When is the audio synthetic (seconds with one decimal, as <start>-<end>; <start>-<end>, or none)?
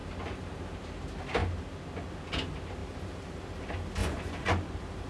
4.0-4.5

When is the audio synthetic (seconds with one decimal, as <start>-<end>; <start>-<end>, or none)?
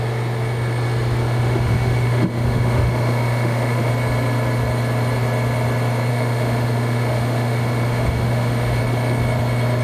1.2-3.9; 6.1-8.8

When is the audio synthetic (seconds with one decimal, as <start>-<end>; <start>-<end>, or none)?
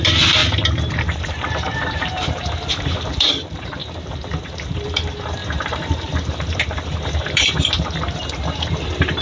0.0-0.4; 0.9-3.8; 4.4-9.2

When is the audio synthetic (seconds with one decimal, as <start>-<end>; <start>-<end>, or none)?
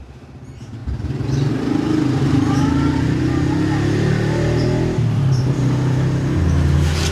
none